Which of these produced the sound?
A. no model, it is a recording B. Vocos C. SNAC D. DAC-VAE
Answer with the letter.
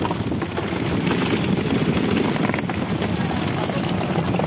A